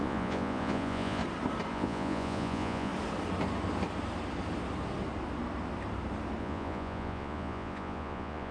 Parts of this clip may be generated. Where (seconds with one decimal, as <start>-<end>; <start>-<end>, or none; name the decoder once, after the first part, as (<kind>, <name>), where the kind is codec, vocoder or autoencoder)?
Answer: 0.0-1.2 (vocoder, Vocos); 1.7-2.9; 6.4-8.5